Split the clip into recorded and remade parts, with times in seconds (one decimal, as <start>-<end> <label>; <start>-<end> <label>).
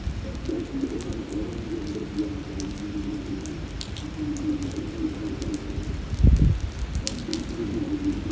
0.0-8.3 recorded